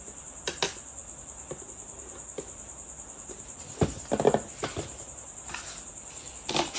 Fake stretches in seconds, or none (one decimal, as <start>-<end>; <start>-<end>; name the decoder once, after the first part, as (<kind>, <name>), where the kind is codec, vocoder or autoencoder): none